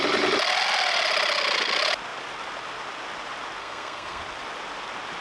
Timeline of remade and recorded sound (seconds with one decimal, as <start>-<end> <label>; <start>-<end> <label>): 0.0-3.6 recorded; 3.6-4.2 remade; 4.2-5.2 recorded